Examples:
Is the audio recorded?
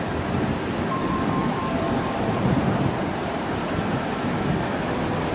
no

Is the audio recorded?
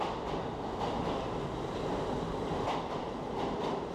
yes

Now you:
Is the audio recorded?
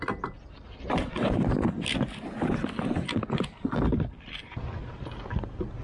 yes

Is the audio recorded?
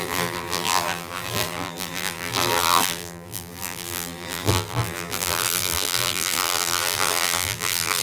no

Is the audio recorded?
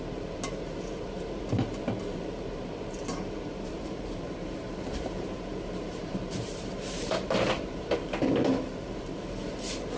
no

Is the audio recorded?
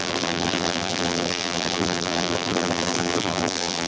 no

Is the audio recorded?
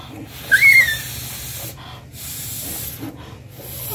yes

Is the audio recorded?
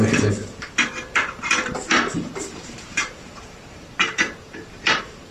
no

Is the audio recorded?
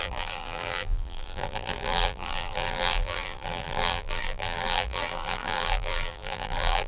no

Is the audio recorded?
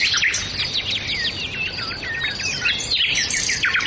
yes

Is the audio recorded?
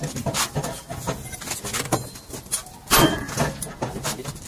yes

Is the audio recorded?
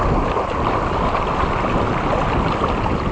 yes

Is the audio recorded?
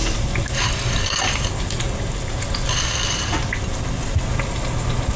yes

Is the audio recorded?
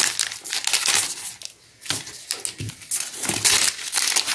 yes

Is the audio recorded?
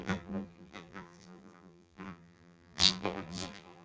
no